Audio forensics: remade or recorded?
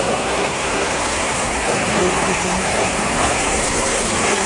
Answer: remade